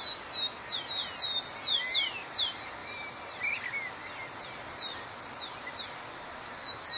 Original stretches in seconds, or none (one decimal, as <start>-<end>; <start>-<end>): 0.0-2.8; 3.4-7.0